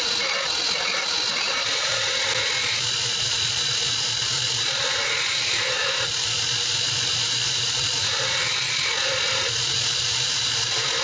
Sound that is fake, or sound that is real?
real